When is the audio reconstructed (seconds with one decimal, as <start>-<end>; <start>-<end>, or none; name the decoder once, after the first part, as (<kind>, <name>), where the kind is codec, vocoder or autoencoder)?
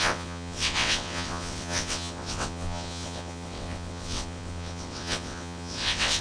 0.0-6.2 (vocoder, WaveNeXt)